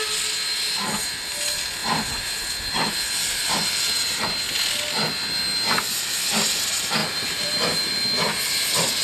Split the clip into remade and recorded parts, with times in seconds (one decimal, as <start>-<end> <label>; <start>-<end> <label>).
0.0-1.8 recorded; 1.8-2.3 remade; 2.3-3.2 recorded; 3.2-4.2 remade; 4.2-7.0 recorded; 7.0-7.9 remade; 7.9-9.0 recorded